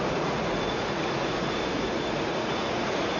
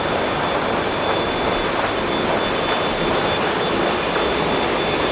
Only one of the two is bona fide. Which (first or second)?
second